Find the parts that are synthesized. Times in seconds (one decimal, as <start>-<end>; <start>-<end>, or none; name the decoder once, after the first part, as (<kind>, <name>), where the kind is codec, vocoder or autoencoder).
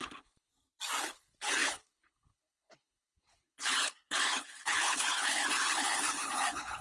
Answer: 0.0-0.5 (codec, HILCodec); 1.0-6.8